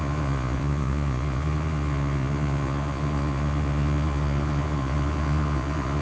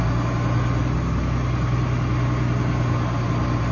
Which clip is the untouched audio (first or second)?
second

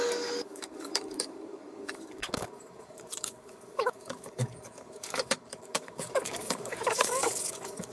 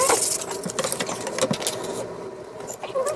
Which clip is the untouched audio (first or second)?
second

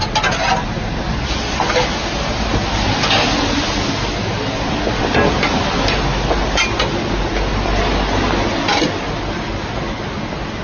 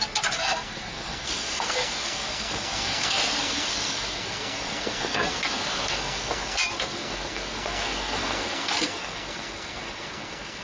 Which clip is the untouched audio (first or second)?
first